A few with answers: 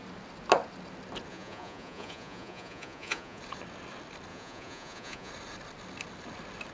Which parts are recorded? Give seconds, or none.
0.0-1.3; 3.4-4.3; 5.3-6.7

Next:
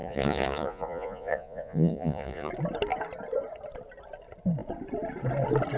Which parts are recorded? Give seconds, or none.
2.5-5.8

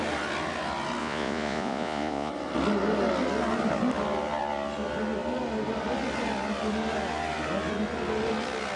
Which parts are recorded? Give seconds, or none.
0.0-1.0; 2.3-8.8

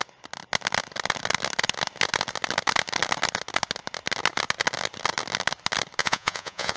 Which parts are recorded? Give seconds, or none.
0.0-6.0